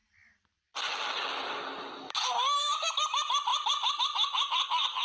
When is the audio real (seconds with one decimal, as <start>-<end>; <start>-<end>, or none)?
0.0-5.0